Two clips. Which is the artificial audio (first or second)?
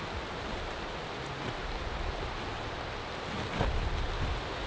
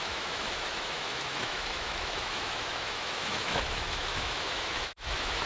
second